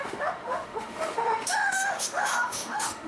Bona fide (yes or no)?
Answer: no